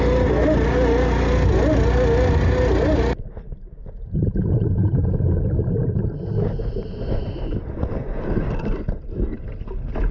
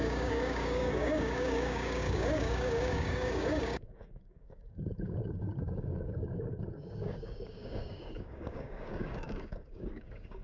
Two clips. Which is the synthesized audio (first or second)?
second